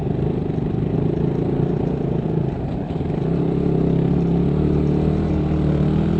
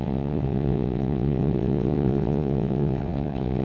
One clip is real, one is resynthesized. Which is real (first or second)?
first